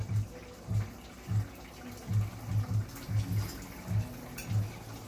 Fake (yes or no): no